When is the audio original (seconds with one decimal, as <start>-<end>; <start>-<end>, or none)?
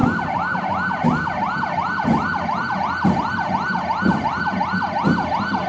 0.0-5.7